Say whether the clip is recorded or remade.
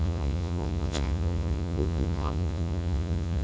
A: remade